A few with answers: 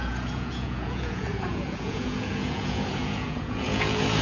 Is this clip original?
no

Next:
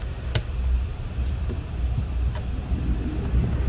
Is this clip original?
yes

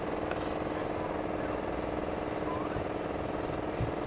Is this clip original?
yes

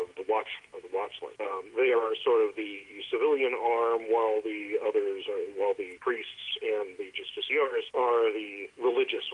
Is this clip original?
no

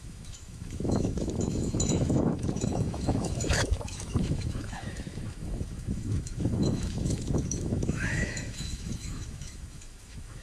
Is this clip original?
no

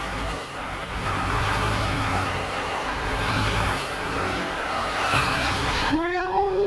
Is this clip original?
no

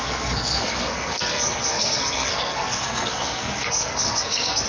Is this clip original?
no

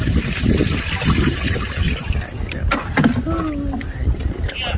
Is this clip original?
yes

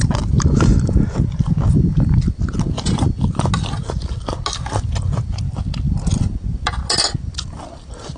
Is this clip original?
yes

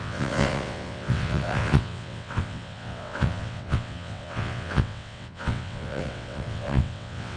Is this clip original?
no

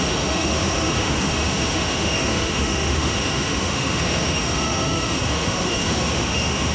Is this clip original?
no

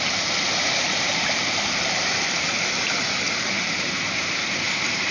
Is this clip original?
no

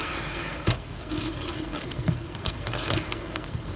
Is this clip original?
no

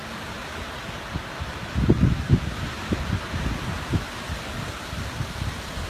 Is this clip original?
yes